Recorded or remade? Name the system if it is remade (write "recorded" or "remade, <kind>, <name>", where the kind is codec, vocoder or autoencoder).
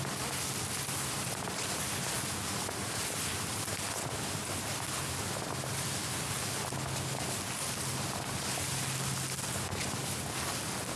recorded